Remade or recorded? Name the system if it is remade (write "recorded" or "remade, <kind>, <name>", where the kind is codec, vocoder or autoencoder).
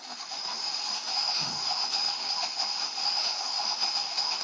remade, autoencoder, DAC-VAE